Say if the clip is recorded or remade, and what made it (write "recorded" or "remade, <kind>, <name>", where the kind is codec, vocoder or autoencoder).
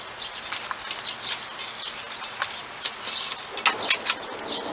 recorded